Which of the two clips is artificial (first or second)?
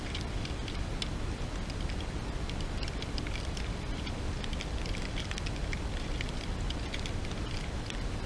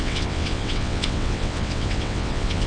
second